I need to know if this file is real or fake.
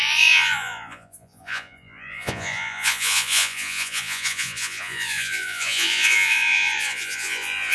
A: fake